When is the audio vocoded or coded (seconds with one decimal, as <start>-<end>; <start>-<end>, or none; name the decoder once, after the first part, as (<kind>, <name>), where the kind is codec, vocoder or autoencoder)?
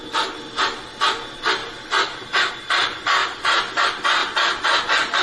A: 1.6-2.5 (vocoder, BigVGAN v2); 3.2-3.8